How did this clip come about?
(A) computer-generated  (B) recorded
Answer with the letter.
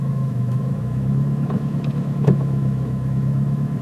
A